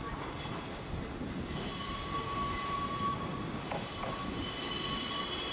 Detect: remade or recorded recorded